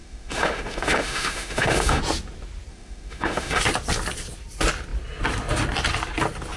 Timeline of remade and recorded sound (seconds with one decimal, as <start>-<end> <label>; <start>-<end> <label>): 0.0-2.0 remade; 2.0-2.7 recorded; 2.7-3.6 remade; 3.6-6.6 recorded